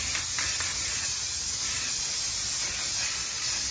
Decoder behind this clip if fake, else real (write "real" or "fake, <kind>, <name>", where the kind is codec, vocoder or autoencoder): real